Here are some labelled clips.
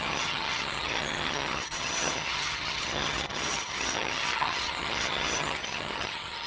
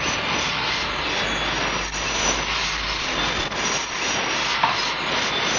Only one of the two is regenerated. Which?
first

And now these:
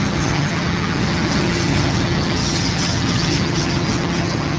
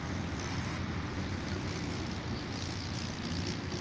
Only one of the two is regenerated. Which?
first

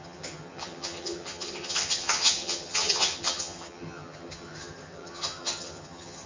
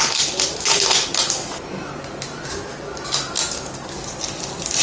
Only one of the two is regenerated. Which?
first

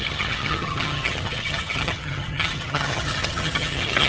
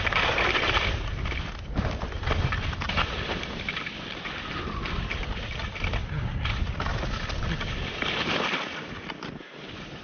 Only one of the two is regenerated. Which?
first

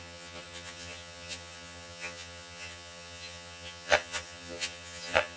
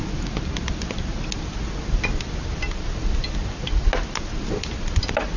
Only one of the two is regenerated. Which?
first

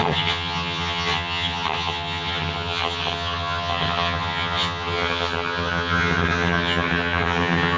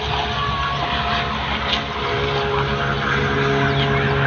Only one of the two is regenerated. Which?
first